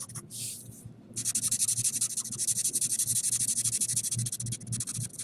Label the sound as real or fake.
real